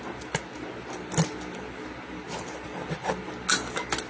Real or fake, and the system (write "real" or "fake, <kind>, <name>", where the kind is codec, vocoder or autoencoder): real